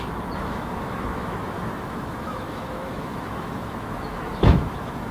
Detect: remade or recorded remade